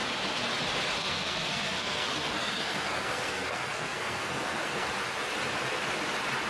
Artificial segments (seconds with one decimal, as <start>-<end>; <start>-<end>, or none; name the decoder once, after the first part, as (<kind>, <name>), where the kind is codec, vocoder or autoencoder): 1.0-4.9 (codec, SNAC)